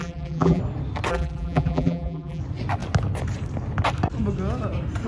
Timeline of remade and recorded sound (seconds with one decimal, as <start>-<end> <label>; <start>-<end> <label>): 0.0-0.6 remade; 0.6-1.1 recorded; 1.1-2.4 remade; 2.4-5.1 recorded